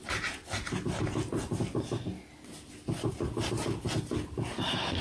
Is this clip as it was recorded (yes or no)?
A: yes